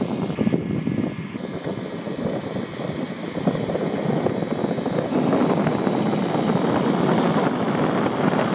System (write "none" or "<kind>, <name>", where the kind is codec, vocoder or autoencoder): none